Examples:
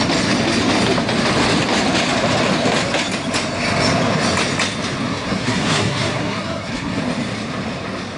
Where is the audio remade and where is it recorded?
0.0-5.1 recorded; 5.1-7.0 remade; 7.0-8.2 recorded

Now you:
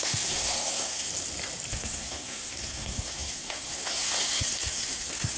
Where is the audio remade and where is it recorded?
0.0-1.1 remade; 1.1-1.7 recorded; 1.7-5.4 remade

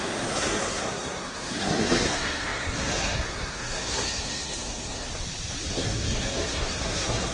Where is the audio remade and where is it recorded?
0.0-5.1 remade; 5.1-5.7 recorded; 5.7-7.3 remade

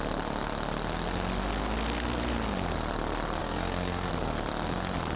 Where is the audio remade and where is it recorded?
0.0-3.4 recorded; 3.4-4.1 remade; 4.1-5.2 recorded

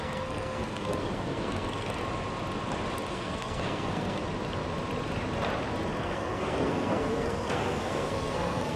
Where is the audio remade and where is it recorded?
0.0-2.0 remade; 2.0-3.1 recorded; 3.1-4.2 remade; 4.2-6.0 recorded; 6.0-8.8 remade

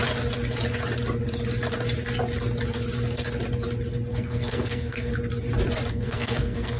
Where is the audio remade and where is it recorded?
0.0-4.1 recorded; 4.1-5.1 remade; 5.1-5.9 recorded; 5.9-6.8 remade

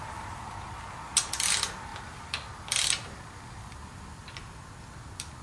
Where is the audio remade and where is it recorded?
0.0-5.4 recorded